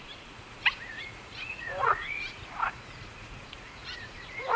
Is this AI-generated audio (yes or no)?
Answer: yes